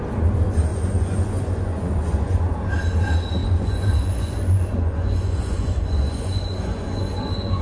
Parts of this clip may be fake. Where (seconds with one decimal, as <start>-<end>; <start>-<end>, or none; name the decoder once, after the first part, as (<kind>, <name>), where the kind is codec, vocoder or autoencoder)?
0.7-2.5 (vocoder, Vocos); 3.4-7.6